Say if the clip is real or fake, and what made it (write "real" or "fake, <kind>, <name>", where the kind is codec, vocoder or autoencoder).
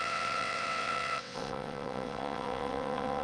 fake, vocoder, WaveNeXt